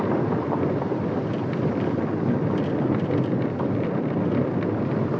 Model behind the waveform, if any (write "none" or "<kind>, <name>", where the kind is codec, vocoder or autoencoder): none